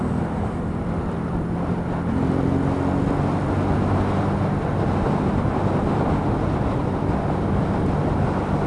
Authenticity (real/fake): real